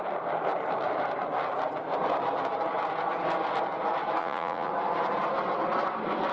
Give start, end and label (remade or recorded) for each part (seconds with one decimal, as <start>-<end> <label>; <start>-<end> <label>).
0.0-4.2 recorded; 4.2-4.7 remade; 4.7-6.3 recorded